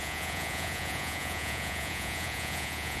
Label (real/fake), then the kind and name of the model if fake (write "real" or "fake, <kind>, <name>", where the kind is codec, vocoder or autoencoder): fake, vocoder, Vocos